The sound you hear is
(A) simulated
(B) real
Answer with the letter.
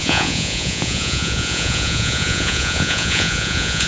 A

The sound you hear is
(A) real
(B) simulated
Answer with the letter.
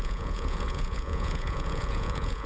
B